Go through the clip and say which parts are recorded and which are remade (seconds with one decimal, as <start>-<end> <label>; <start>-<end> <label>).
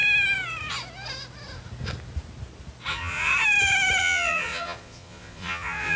0.0-2.9 recorded; 2.9-3.3 remade; 3.3-4.0 recorded; 4.0-6.0 remade